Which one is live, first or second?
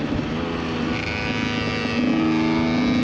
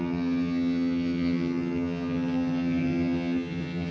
first